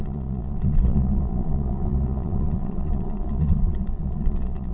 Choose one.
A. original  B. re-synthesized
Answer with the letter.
B